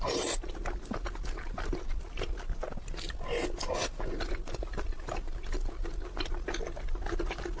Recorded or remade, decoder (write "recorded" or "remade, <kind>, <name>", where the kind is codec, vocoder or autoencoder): recorded